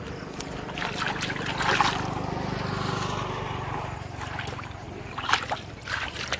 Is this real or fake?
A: real